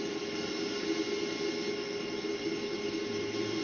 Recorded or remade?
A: recorded